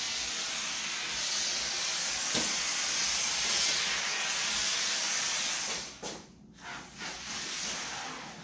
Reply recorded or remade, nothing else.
recorded